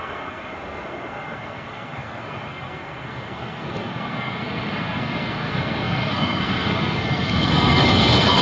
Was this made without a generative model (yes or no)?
no